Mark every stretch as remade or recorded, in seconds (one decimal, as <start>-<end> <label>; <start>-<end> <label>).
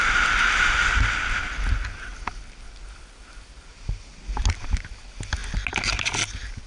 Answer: 0.0-6.7 recorded